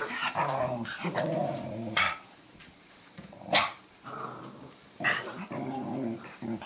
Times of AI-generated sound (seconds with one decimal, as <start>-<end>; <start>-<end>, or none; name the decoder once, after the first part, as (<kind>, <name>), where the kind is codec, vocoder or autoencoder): 0.0-6.7 (vocoder, BigVGAN v2)